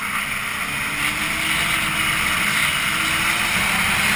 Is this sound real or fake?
real